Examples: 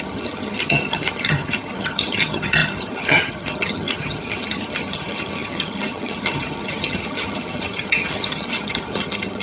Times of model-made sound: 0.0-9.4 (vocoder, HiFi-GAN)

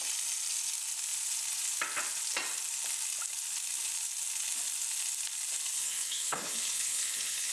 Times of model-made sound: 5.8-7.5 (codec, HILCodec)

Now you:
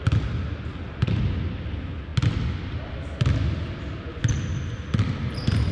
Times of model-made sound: none

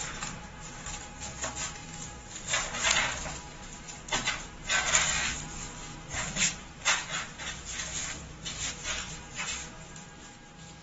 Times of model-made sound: 0.0-0.7 (vocoder, BigVGAN v2); 5.9-8.7

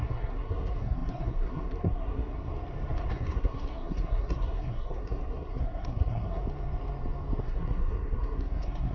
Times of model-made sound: 0.0-2.5 (codec, SNAC); 3.1-6.4; 7.4-8.9

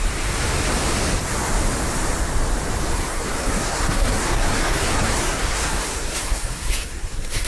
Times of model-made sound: 2.9-7.5 (codec, SNAC)